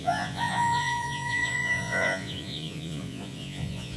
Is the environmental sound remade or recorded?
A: remade